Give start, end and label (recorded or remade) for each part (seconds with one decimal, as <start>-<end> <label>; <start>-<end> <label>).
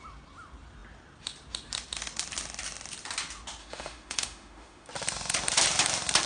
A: 0.0-3.6 recorded; 3.6-4.9 remade; 4.9-6.3 recorded